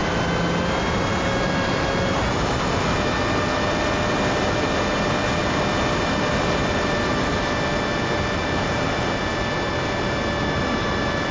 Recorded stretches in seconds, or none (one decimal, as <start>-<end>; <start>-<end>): 0.0-11.3